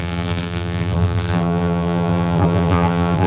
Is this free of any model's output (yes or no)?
no